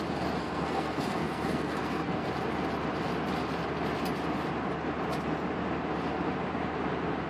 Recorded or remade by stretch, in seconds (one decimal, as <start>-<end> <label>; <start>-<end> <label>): 0.0-0.4 recorded; 0.4-2.3 remade; 2.3-7.3 recorded